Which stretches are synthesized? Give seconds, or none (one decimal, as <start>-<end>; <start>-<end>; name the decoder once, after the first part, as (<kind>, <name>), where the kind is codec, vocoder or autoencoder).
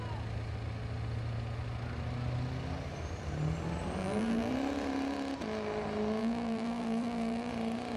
4.0-4.5 (vocoder, BigVGAN v2); 6.2-7.5